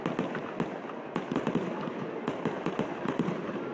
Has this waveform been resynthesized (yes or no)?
no